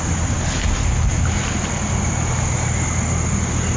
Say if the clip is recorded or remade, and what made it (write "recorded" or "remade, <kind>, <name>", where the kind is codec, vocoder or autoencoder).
recorded